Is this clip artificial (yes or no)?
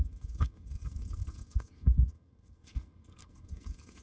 yes